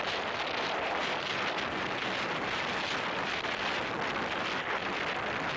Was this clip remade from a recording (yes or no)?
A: no